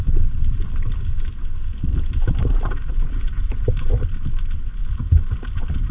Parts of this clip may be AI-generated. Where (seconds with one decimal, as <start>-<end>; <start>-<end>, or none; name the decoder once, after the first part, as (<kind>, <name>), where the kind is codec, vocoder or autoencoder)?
1.9-3.9 (vocoder, BigVGAN v2)